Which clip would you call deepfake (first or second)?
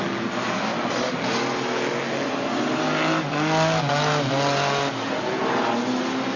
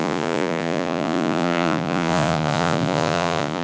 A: second